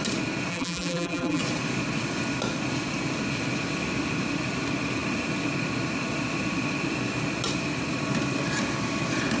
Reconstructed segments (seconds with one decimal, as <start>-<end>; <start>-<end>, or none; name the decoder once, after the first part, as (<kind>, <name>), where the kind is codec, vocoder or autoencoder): 0.5-1.4 (vocoder, BigVGAN v2)